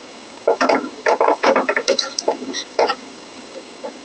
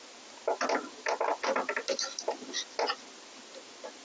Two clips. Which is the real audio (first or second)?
second